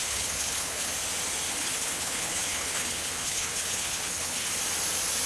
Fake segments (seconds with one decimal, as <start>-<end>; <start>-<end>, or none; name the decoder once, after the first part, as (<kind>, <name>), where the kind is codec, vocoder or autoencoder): 0.0-0.9 (codec, HILCodec); 1.5-4.5